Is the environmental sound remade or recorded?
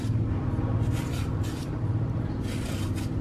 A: recorded